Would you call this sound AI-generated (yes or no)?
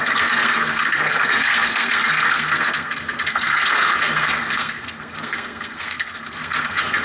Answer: yes